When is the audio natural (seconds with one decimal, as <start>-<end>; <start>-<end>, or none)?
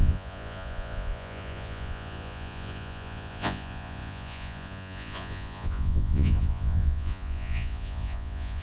none